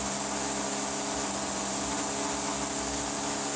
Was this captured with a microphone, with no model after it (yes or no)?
yes